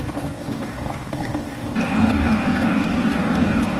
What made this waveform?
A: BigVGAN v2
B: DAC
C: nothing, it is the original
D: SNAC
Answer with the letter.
B